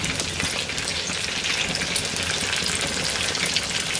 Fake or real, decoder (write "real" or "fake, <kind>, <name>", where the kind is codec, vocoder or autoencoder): real